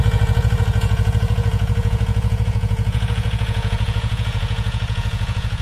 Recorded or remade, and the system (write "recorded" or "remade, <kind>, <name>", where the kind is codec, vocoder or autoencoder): remade, vocoder, Vocos